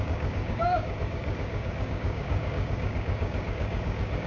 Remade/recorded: remade